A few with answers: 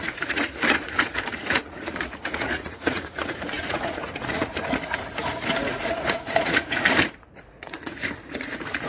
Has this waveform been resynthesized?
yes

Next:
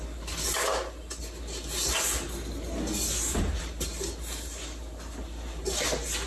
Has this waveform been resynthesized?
no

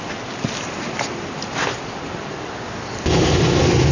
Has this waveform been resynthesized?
no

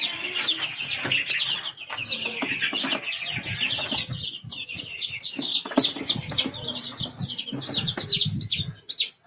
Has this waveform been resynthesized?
no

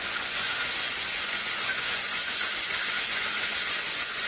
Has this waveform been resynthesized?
yes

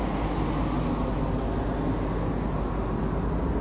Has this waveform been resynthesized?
no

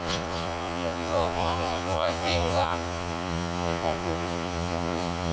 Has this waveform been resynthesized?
yes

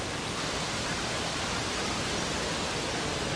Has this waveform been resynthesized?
no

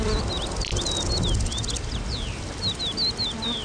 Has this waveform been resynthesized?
no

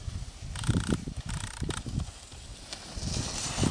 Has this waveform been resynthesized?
no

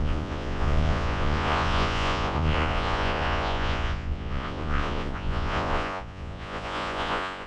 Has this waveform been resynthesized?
yes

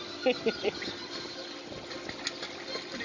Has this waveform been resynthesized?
no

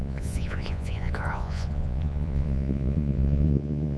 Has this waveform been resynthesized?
yes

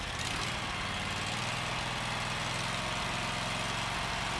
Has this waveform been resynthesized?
no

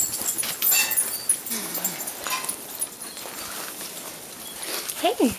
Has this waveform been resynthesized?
no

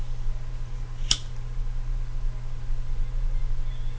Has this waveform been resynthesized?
no